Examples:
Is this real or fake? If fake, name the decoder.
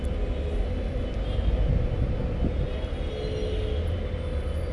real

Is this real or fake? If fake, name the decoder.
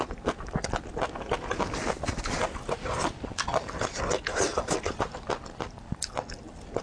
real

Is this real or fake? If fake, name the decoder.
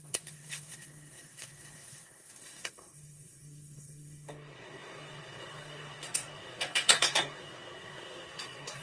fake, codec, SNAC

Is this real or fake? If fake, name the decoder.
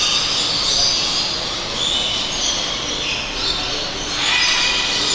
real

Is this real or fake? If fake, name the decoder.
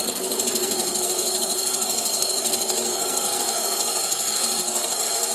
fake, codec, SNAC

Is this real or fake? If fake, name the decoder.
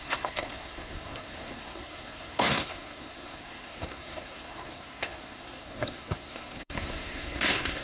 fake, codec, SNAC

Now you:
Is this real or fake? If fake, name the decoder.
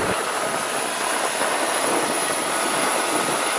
real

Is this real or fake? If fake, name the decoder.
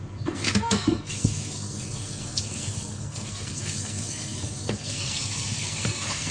fake, codec, SNAC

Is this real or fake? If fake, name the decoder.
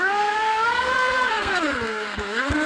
fake, codec, SNAC